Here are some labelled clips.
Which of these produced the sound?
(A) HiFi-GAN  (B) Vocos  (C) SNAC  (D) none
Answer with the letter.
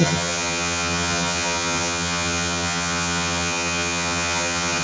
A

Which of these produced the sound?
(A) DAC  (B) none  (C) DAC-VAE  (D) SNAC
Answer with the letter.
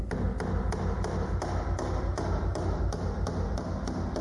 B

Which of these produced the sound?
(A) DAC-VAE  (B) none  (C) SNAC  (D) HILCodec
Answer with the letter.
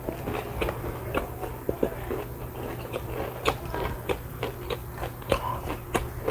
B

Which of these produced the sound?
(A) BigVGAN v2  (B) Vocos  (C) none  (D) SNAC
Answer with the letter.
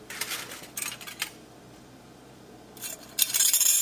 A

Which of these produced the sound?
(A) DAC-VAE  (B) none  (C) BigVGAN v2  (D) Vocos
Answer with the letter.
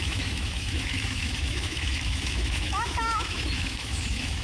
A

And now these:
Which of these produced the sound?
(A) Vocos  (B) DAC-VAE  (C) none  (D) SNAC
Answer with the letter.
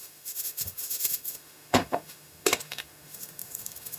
B